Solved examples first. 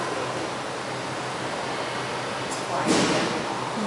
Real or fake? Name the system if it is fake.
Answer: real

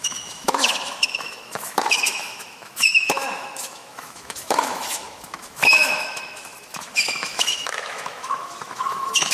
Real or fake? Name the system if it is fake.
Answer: fake, autoencoder, DAC-VAE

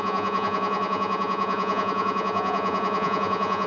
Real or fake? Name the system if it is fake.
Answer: fake, vocoder, Vocos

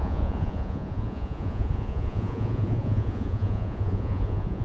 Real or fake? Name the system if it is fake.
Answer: fake, vocoder, Vocos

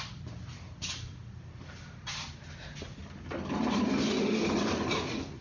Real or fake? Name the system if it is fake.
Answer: real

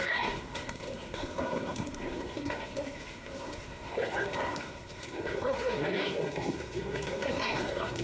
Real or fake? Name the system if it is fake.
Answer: fake, codec, SNAC